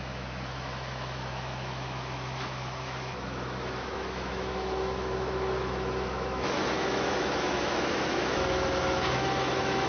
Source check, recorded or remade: remade